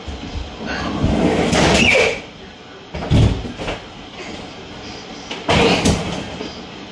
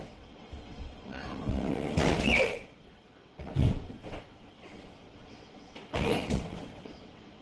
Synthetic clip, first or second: second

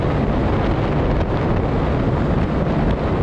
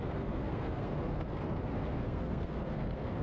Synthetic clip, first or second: second